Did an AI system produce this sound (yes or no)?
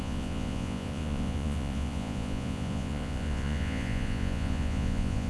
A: yes